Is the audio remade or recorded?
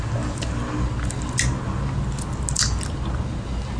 recorded